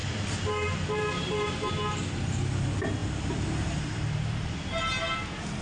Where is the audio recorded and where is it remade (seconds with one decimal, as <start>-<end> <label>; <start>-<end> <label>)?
0.0-1.7 remade; 1.7-5.6 recorded